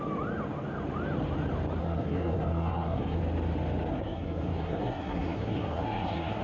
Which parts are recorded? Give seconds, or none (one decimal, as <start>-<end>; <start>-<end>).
0.0-1.8; 3.2-3.9